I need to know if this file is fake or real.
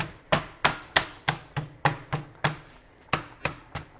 real